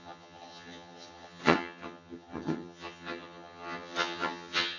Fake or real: fake